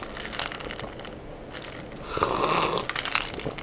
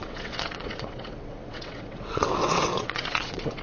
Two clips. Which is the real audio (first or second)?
first